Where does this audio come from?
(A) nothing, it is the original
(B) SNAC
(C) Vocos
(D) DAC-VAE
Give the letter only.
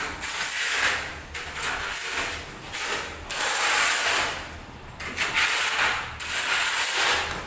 A